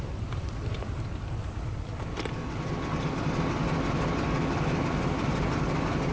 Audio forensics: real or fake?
real